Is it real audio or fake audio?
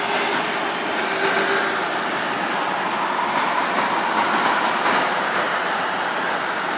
real